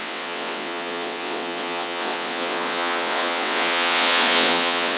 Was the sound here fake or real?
fake